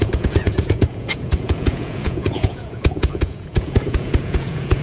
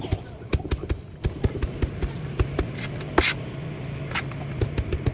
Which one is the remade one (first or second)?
first